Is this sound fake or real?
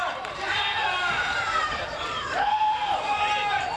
fake